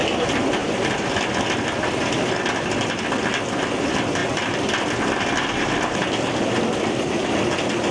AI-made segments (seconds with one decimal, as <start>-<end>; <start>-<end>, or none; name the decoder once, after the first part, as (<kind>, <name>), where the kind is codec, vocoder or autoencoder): 0.6-2.9 (vocoder, BigVGAN v2); 4.2-7.0

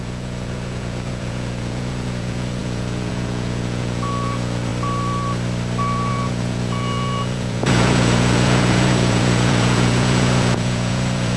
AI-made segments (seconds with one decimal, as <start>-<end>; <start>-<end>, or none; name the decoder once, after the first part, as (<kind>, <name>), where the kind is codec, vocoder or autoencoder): 0.0-4.7 (vocoder, Vocos); 6.1-11.4

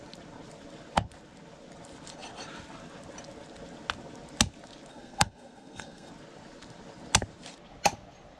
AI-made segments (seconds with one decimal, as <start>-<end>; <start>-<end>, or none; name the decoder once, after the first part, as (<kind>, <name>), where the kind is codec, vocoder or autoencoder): 4.9-6.1 (codec, SNAC)